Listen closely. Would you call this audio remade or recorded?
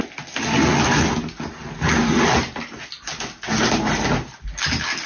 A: recorded